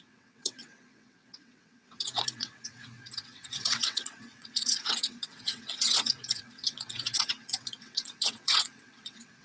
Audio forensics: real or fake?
fake